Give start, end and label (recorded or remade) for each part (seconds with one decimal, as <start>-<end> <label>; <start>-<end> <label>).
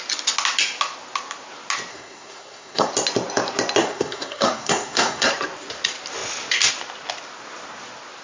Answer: 0.0-1.9 recorded; 1.9-2.9 remade; 2.9-3.8 recorded; 3.8-5.3 remade; 5.3-8.2 recorded